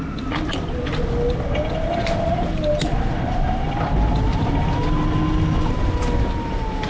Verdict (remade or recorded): recorded